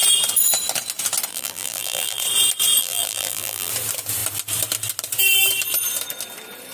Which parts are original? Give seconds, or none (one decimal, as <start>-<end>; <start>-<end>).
0.0-1.3; 2.2-2.8; 3.7-6.7